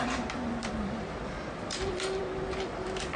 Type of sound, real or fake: fake